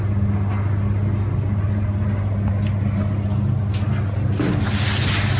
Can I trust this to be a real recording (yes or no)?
yes